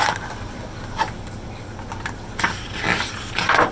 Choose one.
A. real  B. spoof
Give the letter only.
A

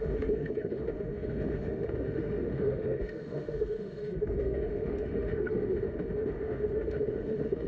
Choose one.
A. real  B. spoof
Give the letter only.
B